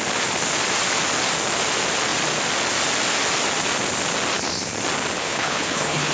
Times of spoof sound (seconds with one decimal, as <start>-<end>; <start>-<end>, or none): 5.2-6.1